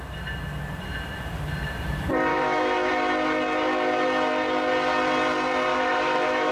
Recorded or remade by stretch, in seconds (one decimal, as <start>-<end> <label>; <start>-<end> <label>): 0.0-2.3 recorded; 2.3-2.9 remade; 2.9-5.7 recorded; 5.7-6.5 remade